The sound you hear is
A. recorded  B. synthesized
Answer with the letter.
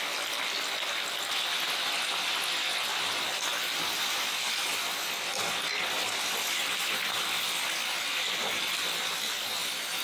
A